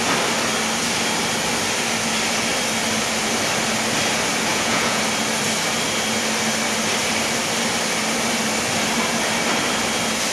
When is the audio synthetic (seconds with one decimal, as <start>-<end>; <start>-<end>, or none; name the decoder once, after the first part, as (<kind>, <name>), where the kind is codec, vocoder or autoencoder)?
4.5-5.0 (vocoder, Vocos)